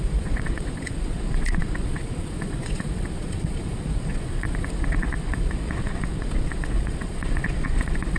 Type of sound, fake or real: fake